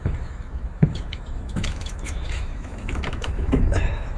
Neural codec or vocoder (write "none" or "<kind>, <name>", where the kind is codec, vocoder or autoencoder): autoencoder, DAC-VAE